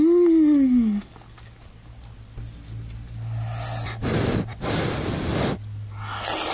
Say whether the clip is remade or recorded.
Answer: recorded